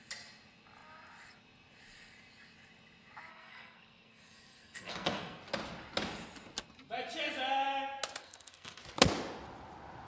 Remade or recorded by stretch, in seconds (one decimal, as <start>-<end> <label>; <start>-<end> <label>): 0.0-3.3 recorded; 3.3-5.4 remade; 5.4-8.2 recorded; 8.2-8.8 remade; 8.8-10.1 recorded

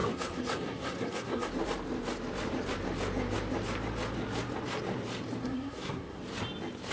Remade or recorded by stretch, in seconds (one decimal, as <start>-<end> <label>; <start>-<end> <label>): 0.0-1.5 remade; 1.5-5.4 recorded; 5.4-6.2 remade; 6.2-6.9 recorded